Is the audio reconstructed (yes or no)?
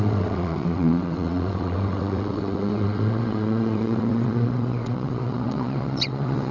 yes